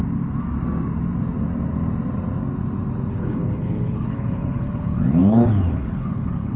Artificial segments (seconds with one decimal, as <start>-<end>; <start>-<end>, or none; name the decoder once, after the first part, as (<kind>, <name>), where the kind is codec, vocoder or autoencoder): 3.1-6.6 (codec, HILCodec)